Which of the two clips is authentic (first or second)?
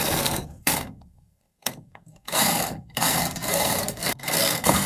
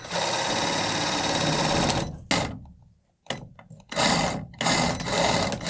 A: second